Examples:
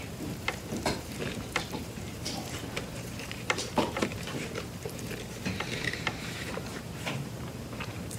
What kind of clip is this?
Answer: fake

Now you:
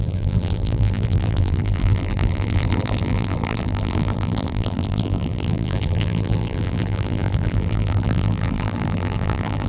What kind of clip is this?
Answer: fake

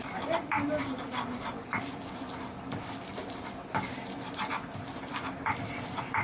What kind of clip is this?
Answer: fake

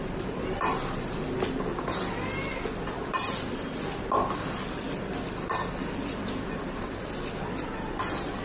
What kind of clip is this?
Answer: real